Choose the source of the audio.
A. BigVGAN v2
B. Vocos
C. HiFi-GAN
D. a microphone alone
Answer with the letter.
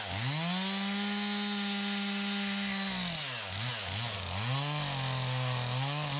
D